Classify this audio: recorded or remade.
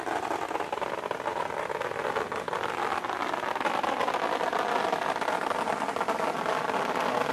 recorded